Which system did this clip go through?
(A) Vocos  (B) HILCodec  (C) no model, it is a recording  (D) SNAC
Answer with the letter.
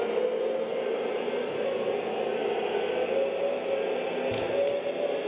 C